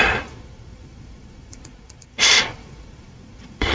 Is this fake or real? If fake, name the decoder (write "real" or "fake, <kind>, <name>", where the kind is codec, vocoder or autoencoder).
fake, vocoder, Vocos